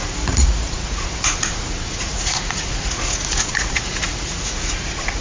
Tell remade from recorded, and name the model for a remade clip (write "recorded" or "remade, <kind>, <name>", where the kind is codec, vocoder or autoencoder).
remade, vocoder, Vocos